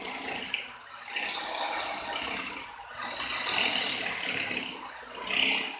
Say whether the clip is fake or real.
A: real